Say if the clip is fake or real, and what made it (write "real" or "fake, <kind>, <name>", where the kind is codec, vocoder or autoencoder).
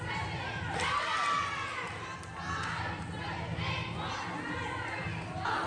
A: real